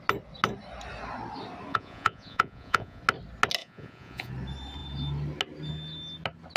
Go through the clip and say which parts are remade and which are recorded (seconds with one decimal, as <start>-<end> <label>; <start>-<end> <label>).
0.0-1.7 recorded; 1.7-3.0 remade; 3.0-3.6 recorded; 3.6-4.3 remade; 4.3-6.6 recorded